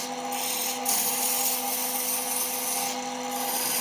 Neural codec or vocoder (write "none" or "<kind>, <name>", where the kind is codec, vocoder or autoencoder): none